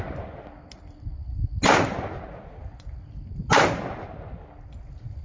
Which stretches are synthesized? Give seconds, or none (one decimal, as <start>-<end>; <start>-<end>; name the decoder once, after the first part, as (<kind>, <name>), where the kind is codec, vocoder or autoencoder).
none